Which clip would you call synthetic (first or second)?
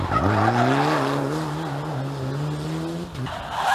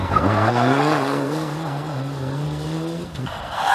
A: second